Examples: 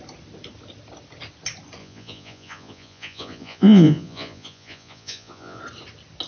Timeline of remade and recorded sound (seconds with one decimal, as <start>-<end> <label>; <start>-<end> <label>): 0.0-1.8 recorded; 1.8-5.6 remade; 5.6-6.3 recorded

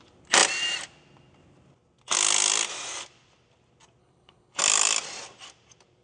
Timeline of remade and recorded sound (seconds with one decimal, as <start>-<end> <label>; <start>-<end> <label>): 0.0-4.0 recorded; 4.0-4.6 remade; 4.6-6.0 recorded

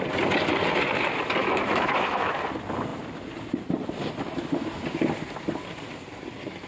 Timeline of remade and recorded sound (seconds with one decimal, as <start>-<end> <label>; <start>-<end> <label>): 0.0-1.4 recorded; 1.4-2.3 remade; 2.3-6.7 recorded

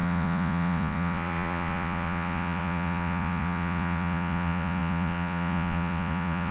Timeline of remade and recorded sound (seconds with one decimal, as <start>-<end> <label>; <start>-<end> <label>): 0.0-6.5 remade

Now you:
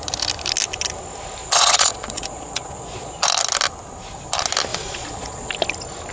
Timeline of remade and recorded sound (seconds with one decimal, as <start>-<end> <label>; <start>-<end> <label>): 0.0-1.4 recorded; 1.4-3.2 remade; 3.2-4.7 recorded; 4.7-5.5 remade; 5.5-6.1 recorded

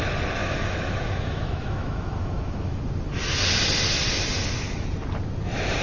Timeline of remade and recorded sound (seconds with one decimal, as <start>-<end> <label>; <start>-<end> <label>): 0.0-0.4 recorded; 0.4-2.8 remade; 2.8-5.8 recorded

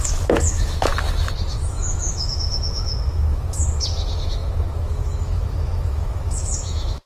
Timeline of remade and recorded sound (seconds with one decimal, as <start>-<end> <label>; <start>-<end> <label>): 0.0-0.9 remade; 0.9-1.5 recorded; 1.5-7.1 remade

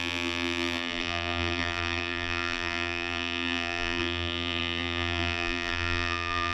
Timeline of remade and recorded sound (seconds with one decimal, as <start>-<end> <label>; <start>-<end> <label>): 0.0-6.5 remade